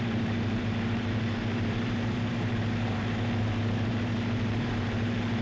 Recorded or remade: remade